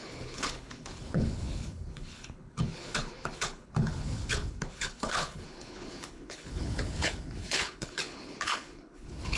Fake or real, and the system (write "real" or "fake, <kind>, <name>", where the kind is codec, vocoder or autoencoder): fake, codec, HILCodec